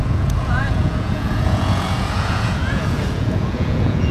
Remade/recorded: remade